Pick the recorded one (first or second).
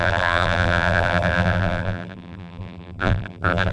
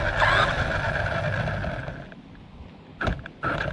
second